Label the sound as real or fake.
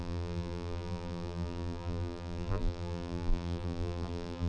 fake